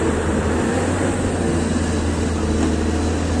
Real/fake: real